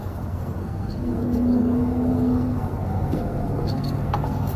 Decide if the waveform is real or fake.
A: fake